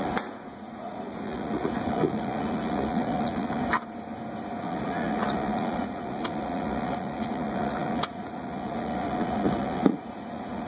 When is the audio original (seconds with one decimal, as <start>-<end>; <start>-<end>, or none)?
3.6-4.6